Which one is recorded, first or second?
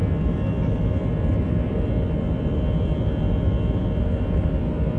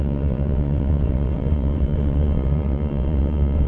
first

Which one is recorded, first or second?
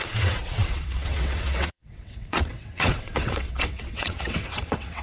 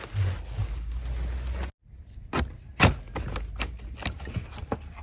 second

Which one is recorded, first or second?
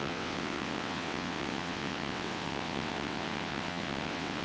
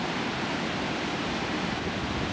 second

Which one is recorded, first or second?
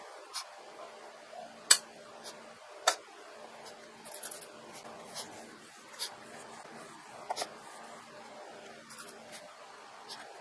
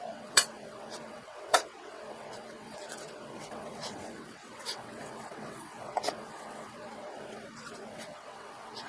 first